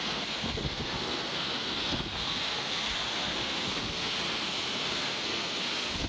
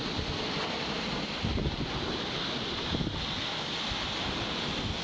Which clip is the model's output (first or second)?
first